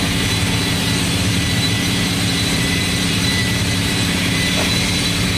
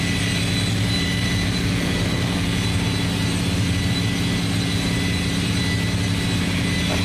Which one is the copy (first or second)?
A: first